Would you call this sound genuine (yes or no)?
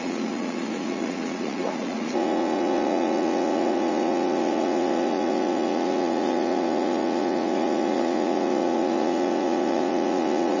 no